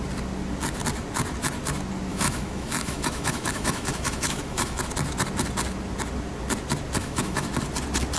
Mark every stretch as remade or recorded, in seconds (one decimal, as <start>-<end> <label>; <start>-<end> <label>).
0.0-2.1 recorded; 2.1-4.8 remade; 4.8-7.0 recorded; 7.0-7.5 remade; 7.5-8.2 recorded